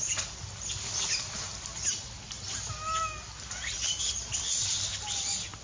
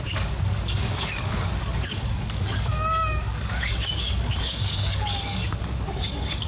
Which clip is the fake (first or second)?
second